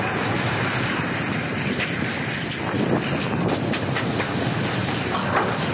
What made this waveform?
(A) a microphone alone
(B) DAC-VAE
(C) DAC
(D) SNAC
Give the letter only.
A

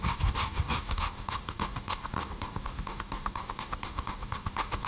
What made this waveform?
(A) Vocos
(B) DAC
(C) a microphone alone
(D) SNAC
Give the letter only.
B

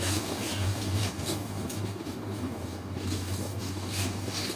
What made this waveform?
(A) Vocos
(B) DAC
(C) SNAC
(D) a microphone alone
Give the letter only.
B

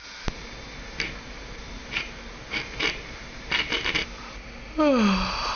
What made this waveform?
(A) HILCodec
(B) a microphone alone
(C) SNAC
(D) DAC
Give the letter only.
B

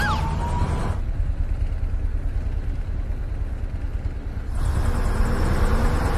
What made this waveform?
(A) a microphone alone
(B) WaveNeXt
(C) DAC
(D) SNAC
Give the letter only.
A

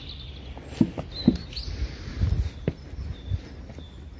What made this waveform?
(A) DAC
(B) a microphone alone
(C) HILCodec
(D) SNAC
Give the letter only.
B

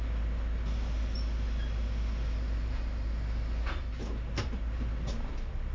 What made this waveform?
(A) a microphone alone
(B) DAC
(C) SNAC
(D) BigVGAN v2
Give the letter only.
A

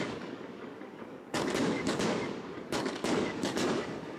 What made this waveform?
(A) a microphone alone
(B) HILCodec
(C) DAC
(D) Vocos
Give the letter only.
C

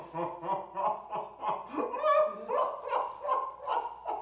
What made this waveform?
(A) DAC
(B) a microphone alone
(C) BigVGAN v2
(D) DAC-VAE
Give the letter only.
B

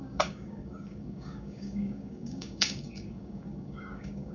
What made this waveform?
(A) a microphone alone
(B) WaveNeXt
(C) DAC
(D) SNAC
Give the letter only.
C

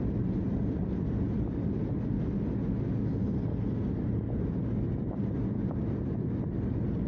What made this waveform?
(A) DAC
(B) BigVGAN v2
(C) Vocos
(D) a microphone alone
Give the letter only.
D